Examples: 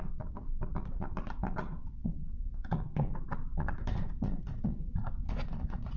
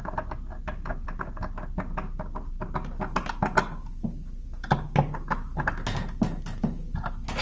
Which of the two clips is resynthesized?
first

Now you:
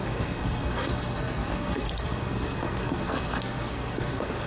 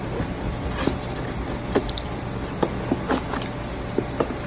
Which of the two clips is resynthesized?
first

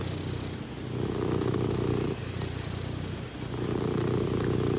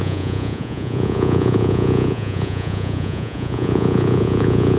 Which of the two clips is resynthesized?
second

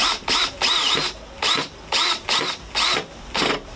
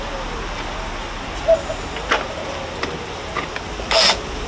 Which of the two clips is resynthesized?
first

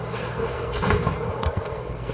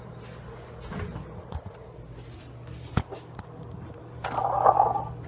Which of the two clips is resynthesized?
first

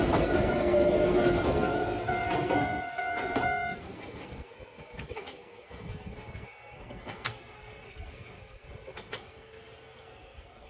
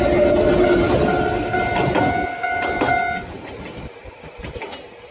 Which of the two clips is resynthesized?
first